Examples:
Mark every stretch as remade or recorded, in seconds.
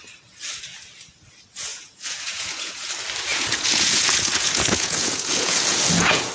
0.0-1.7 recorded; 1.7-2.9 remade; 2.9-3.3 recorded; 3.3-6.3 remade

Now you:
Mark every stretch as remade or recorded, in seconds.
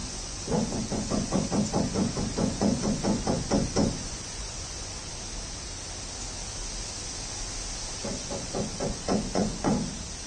0.0-5.1 remade; 5.1-8.0 recorded; 8.0-9.7 remade; 9.7-10.3 recorded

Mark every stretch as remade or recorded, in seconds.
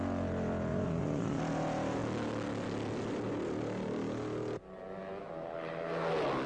0.0-0.7 recorded; 0.7-1.4 remade; 1.4-6.5 recorded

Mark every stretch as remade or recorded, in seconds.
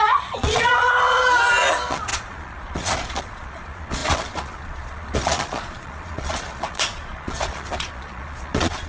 0.0-1.2 remade; 1.2-1.7 recorded; 1.7-8.9 remade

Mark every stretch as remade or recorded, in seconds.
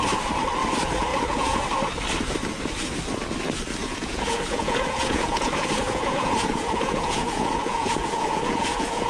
0.0-1.1 recorded; 1.1-1.6 remade; 1.6-3.8 recorded; 3.8-9.1 remade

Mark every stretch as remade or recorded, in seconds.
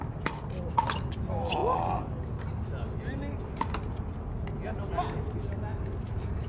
0.0-6.5 recorded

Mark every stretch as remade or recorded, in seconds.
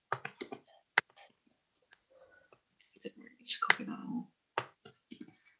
0.0-5.6 recorded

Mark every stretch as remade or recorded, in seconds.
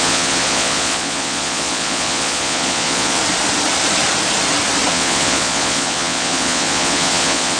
0.0-3.2 remade; 3.2-4.9 recorded; 4.9-7.6 remade